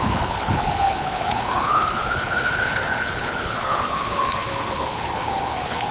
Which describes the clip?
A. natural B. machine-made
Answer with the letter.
B